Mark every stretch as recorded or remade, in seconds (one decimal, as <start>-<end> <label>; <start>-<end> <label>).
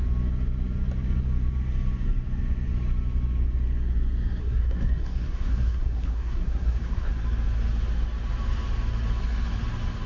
0.0-4.4 recorded; 4.4-7.1 remade; 7.1-10.1 recorded